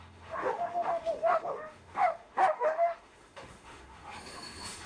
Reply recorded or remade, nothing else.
remade